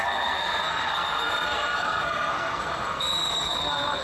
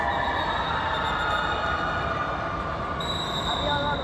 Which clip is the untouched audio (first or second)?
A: second